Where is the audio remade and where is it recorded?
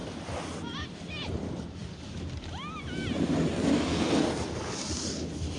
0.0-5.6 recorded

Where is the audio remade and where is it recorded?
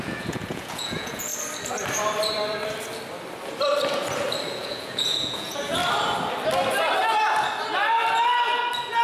0.0-1.3 remade; 1.3-4.6 recorded; 4.6-5.8 remade; 5.8-9.0 recorded